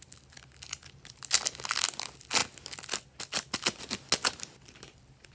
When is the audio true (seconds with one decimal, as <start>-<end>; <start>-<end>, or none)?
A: 0.0-5.3